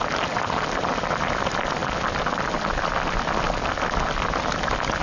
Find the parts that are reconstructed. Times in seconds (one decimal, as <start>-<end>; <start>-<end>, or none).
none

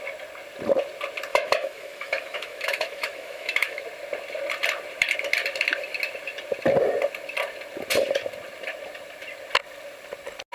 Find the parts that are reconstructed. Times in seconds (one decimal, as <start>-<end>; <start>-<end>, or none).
1.3-3.8

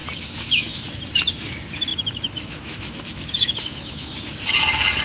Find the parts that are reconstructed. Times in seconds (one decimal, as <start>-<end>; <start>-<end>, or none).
0.0-0.9; 1.9-4.1